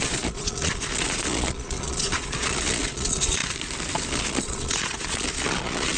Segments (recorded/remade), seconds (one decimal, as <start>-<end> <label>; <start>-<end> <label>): 0.0-3.4 remade; 3.4-4.1 recorded; 4.1-6.0 remade